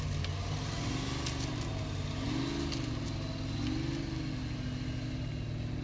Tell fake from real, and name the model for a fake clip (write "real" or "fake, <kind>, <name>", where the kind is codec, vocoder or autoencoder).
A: real